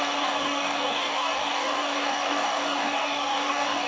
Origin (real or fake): fake